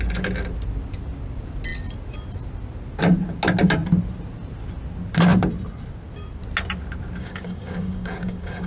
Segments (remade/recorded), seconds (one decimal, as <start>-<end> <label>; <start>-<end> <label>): 0.0-7.2 recorded; 7.2-8.7 remade